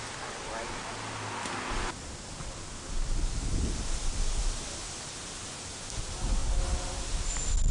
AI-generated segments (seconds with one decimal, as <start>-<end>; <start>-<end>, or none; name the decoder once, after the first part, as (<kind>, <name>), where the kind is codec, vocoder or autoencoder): none